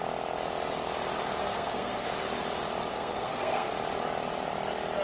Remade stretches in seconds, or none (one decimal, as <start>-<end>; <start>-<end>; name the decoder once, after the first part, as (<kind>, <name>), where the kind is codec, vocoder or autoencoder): 1.4-2.1 (codec, SNAC); 2.9-3.7